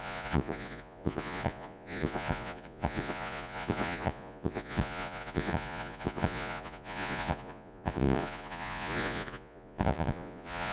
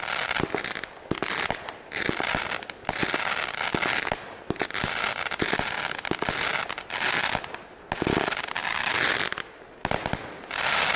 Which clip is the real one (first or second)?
second